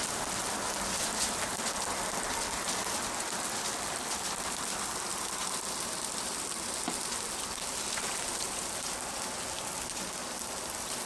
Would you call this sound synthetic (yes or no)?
no